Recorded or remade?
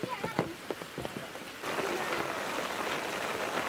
recorded